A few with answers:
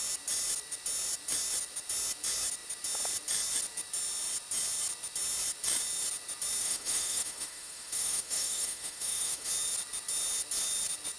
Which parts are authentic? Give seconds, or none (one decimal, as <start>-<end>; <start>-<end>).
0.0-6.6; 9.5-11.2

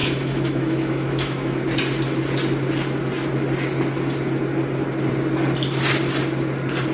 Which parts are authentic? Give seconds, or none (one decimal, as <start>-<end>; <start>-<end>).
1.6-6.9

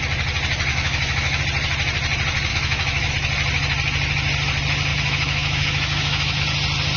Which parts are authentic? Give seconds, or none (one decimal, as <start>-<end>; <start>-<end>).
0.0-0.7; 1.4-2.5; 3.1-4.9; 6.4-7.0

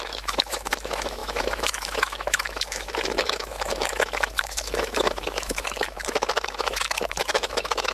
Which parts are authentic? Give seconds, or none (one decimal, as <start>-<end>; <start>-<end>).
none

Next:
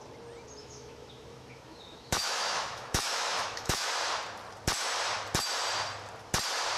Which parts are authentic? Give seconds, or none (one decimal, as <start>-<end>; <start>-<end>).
0.0-0.6; 3.9-6.8

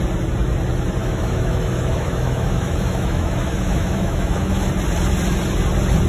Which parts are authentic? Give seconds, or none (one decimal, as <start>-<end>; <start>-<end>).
0.0-1.0; 4.7-6.1

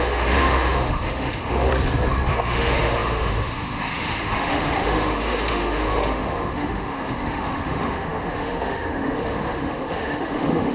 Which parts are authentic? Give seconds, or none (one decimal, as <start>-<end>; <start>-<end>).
1.7-2.3